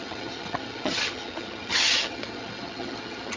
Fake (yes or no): yes